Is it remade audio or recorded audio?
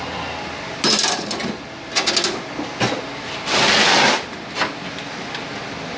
recorded